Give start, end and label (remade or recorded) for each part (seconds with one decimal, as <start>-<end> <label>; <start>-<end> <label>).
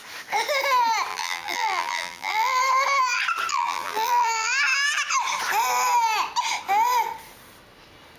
0.0-1.1 recorded; 1.1-2.6 remade; 2.6-3.5 recorded; 3.5-4.5 remade; 4.5-8.2 recorded